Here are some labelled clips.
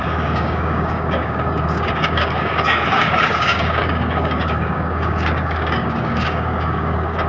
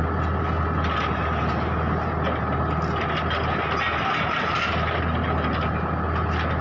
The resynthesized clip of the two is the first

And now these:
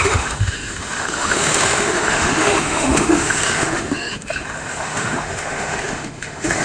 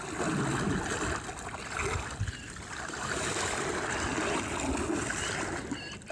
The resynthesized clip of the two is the first